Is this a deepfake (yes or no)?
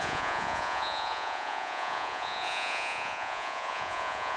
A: yes